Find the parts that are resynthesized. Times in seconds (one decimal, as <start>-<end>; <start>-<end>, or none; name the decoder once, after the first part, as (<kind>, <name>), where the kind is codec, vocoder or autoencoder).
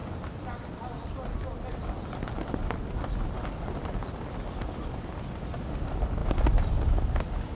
none